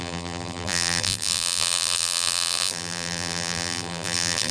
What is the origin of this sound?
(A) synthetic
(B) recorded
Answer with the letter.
A